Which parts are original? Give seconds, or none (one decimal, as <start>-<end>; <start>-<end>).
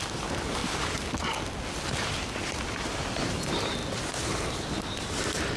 0.6-2.5; 3.8-5.6